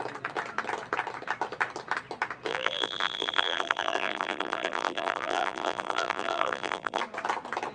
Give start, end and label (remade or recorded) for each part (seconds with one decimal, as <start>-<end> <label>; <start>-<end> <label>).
0.0-2.5 recorded; 2.5-7.0 remade; 7.0-7.7 recorded